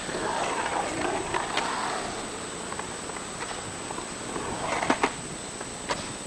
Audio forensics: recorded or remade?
recorded